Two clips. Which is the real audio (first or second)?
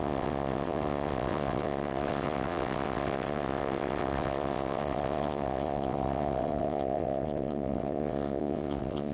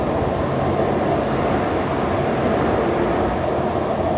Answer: second